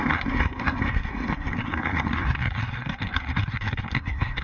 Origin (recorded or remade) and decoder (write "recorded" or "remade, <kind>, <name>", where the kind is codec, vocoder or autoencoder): remade, codec, SNAC